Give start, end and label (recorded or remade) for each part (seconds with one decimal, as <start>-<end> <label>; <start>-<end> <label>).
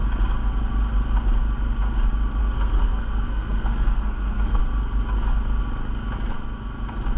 0.0-2.4 recorded; 2.4-4.6 remade; 4.6-7.2 recorded